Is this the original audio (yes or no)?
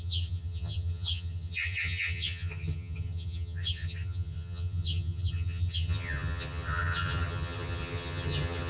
no